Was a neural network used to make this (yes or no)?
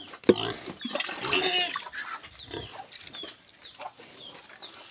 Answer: no